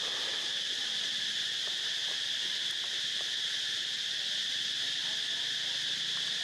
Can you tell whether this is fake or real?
real